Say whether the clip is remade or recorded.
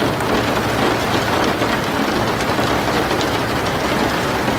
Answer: recorded